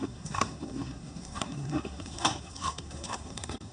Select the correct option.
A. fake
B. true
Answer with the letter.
A